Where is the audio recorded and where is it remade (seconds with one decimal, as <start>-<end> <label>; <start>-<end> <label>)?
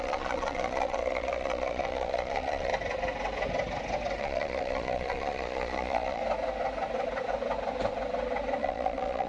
0.0-2.7 remade; 2.7-4.2 recorded; 4.2-6.2 remade; 6.2-8.6 recorded; 8.6-9.3 remade